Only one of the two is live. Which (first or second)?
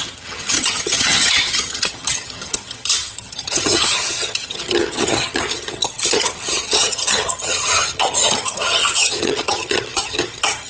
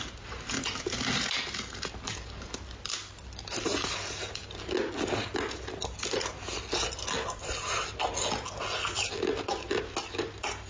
second